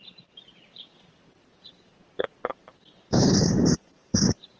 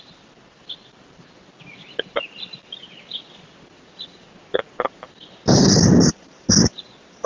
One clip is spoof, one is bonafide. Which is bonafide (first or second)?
second